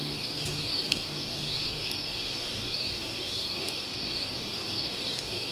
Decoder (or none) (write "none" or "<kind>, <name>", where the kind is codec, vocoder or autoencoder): codec, DAC